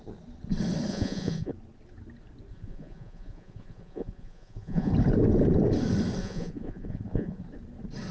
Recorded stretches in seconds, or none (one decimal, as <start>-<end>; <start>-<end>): 0.0-0.9; 1.5-2.5; 4.9-6.2; 7.4-8.1